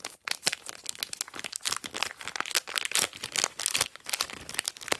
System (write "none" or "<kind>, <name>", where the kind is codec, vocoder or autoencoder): none